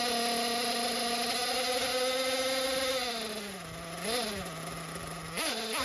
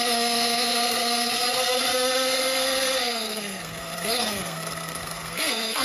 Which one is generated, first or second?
second